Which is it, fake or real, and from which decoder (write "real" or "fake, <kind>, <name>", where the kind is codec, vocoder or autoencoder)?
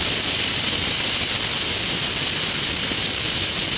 real